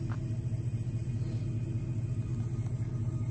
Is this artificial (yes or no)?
no